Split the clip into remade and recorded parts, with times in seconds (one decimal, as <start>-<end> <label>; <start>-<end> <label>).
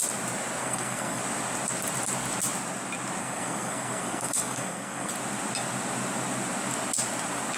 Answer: 0.0-0.6 recorded; 0.6-1.2 remade; 1.2-3.2 recorded; 3.2-5.1 remade; 5.1-7.6 recorded